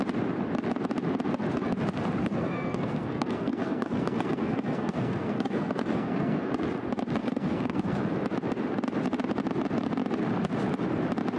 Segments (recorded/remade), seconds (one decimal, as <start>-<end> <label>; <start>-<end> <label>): 0.0-2.2 recorded; 2.2-6.5 remade; 6.5-7.2 recorded; 7.2-8.0 remade; 8.0-11.4 recorded